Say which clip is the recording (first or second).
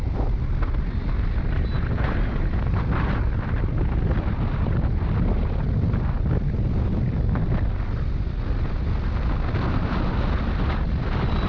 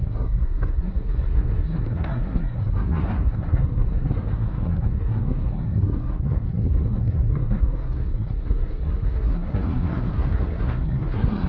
first